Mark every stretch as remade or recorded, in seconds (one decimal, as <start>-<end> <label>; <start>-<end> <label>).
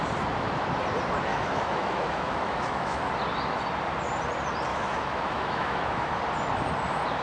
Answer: 0.0-1.3 recorded; 1.3-3.1 remade; 3.1-4.7 recorded; 4.7-6.2 remade; 6.2-7.2 recorded